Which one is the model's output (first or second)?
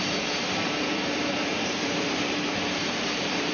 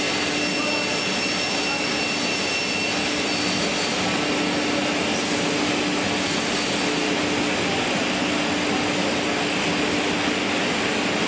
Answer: first